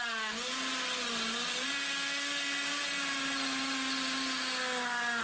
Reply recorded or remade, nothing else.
recorded